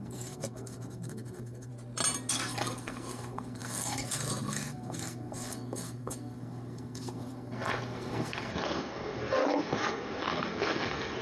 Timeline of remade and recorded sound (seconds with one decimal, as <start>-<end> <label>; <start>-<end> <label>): 0.0-1.7 remade; 1.7-2.3 recorded; 2.3-11.2 remade